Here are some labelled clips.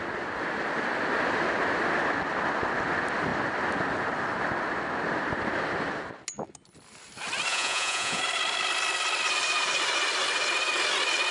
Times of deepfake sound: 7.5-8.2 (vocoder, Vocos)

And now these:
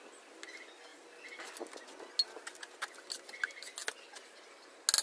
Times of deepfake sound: none

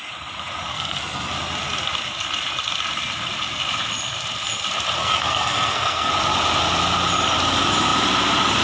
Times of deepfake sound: 0.7-1.3 (codec, SNAC); 5.0-6.1

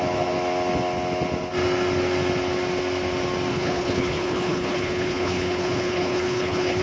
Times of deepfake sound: 3.5-6.8 (codec, HILCodec)

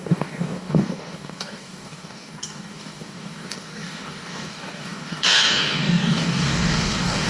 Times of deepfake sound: 0.0-7.3 (codec, DAC)

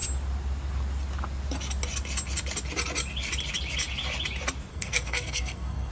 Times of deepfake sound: 4.7-5.9 (codec, SNAC)

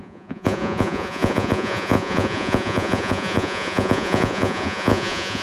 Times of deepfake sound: 0.0-5.4 (vocoder, Vocos)

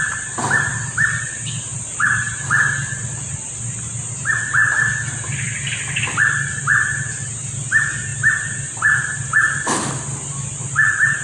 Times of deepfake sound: none